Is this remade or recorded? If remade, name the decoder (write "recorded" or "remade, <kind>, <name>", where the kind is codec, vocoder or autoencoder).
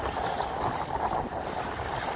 recorded